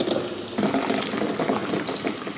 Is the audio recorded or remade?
recorded